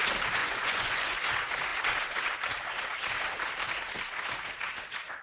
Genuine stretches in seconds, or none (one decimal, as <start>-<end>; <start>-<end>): 0.0-0.4; 1.2-5.2